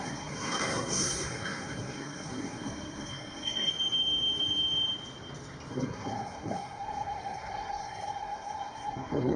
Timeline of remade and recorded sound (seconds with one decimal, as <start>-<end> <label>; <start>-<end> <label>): 0.0-3.7 remade; 3.7-5.7 recorded; 5.7-9.4 remade